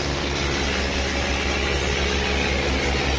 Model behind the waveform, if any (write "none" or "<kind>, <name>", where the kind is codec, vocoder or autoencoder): none